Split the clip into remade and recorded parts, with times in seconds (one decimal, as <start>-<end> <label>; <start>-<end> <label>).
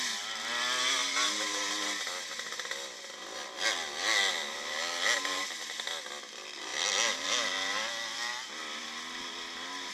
0.0-9.9 recorded